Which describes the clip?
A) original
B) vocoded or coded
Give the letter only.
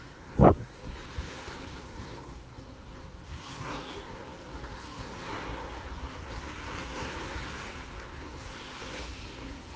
B